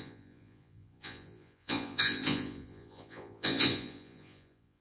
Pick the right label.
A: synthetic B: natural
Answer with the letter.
A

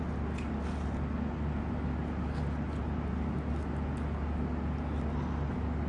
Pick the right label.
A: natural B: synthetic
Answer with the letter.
A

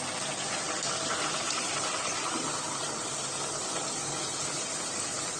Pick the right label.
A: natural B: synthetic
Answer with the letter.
A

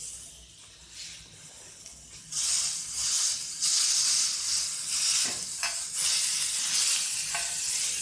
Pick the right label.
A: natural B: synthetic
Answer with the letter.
A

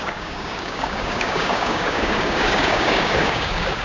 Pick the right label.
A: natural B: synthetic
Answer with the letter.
B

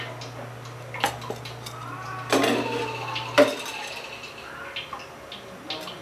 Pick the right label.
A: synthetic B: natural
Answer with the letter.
B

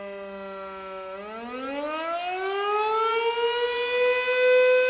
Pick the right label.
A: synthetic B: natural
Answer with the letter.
B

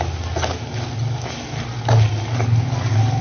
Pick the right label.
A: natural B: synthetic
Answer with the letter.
A